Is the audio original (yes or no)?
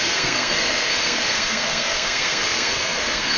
no